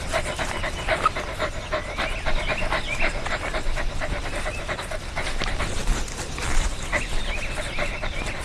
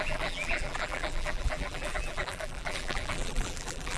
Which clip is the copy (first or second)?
second